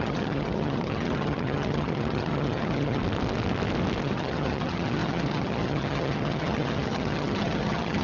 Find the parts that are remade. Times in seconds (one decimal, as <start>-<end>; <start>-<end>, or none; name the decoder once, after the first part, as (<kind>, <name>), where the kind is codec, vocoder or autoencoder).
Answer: 0.0-3.0 (vocoder, HiFi-GAN); 4.0-8.0